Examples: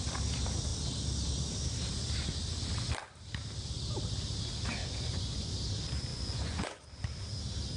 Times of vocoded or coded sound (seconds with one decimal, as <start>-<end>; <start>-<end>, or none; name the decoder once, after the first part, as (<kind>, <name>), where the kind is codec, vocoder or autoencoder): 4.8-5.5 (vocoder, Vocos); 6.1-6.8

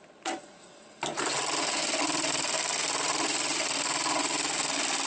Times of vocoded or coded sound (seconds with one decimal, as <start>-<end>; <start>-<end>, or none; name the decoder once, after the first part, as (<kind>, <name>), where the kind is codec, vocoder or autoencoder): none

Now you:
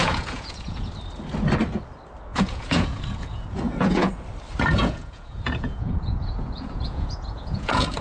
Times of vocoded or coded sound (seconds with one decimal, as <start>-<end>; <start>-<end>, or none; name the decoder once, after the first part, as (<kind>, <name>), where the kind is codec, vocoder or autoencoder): 0.0-0.9 (vocoder, Vocos); 2.3-4.1; 4.7-8.0

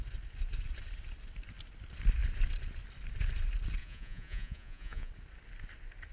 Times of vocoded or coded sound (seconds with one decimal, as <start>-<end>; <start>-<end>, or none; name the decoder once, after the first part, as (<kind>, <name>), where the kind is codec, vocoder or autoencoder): 3.8-5.1 (vocoder, Vocos)